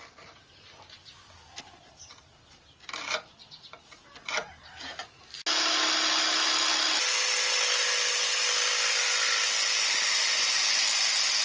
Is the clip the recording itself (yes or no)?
yes